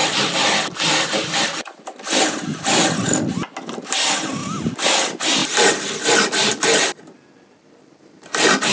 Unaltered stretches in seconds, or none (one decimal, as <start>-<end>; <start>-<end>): 2.8-8.7